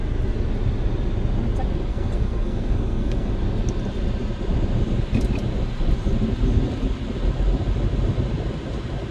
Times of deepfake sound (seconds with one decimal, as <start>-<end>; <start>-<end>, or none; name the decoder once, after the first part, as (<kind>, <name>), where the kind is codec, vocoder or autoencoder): 1.9-3.3 (codec, SNAC)